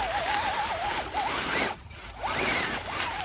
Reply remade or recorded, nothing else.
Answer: recorded